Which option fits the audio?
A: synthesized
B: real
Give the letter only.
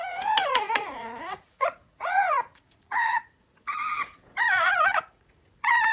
A